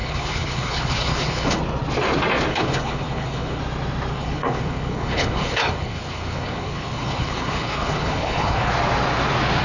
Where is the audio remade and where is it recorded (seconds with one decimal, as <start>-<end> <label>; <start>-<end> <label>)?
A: 0.0-1.6 remade; 1.6-2.5 recorded; 2.5-3.6 remade; 3.6-4.1 recorded; 4.1-8.7 remade; 8.7-9.6 recorded